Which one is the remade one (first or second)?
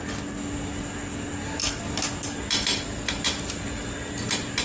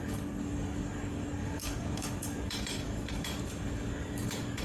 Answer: second